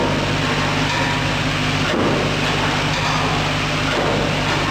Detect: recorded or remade recorded